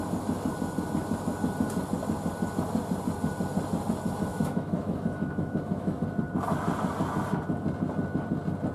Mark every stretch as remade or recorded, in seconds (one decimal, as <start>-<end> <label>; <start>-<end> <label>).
0.0-4.3 recorded; 4.3-6.0 remade; 6.0-8.7 recorded